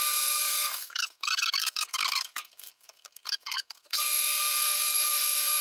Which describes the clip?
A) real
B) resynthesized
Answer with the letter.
B